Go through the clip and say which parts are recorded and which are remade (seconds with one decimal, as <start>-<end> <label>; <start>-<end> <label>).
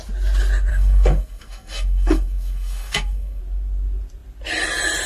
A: 0.0-0.7 recorded; 0.7-3.4 remade; 3.4-5.1 recorded